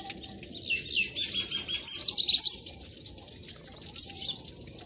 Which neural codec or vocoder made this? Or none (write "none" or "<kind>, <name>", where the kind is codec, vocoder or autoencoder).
none